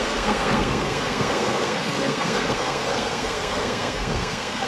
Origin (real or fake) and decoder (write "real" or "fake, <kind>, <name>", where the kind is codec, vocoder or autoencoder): fake, codec, SNAC